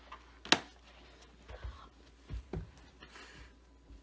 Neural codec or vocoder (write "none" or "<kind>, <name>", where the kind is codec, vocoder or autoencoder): none